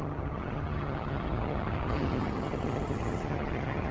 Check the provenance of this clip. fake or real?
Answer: fake